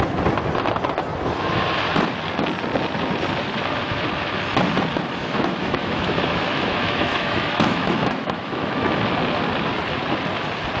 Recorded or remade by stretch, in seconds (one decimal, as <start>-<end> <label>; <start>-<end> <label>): 0.0-5.2 recorded; 5.2-9.0 remade; 9.0-10.8 recorded

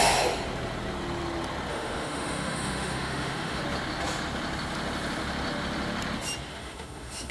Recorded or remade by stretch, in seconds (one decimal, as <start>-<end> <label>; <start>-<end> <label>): 0.0-1.7 recorded; 1.7-3.6 remade; 3.6-6.5 recorded; 6.5-7.3 remade